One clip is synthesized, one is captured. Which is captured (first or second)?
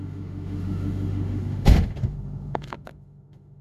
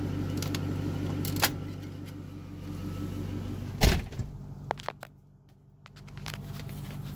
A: second